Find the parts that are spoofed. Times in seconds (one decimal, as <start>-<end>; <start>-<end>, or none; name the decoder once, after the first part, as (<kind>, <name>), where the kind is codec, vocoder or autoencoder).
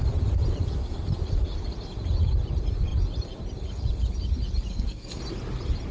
4.7-5.2 (codec, SNAC)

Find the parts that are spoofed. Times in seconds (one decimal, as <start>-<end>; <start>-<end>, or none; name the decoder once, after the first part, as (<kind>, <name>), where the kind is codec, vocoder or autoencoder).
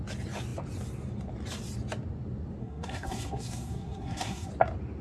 2.6-4.5 (codec, SNAC)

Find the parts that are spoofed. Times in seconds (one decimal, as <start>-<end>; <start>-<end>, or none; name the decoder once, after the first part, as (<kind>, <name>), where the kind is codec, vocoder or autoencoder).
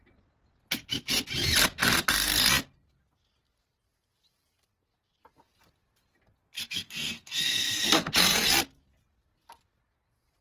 6.4-8.1 (codec, SNAC)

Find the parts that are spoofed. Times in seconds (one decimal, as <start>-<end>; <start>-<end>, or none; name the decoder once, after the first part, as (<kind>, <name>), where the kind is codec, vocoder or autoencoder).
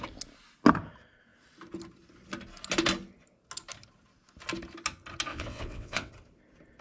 5.3-6.1 (vocoder, WaveNeXt)